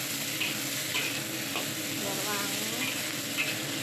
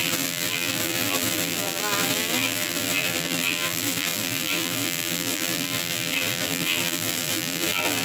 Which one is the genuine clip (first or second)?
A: first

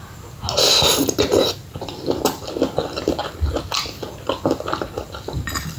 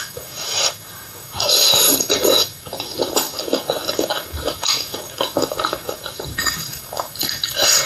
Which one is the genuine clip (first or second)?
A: first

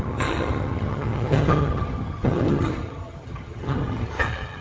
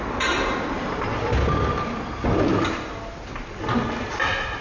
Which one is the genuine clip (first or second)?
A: second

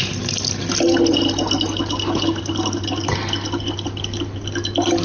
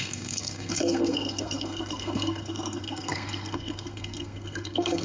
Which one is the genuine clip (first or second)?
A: first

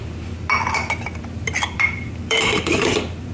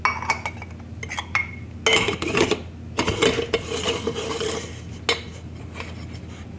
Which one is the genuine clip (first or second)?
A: second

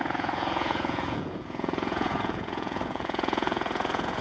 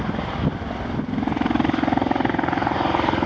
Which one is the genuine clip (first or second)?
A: second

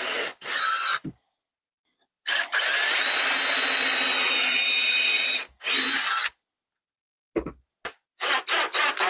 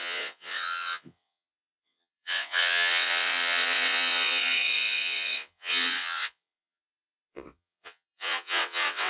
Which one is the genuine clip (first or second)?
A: first